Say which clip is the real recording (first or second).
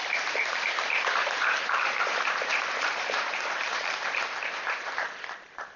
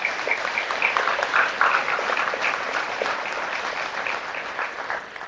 second